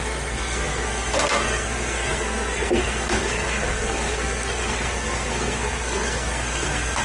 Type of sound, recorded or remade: remade